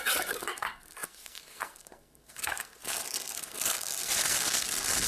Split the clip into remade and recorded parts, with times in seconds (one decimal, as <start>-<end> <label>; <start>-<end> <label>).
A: 0.0-5.1 remade